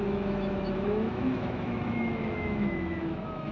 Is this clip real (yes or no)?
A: no